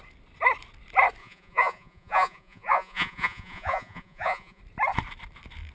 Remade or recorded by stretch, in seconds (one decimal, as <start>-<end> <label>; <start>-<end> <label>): 0.0-1.2 recorded; 1.2-4.6 remade; 4.6-5.7 recorded